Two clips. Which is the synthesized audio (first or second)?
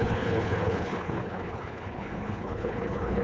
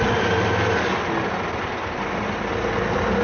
first